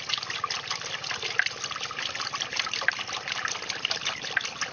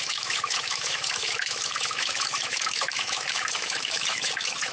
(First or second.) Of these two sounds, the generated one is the second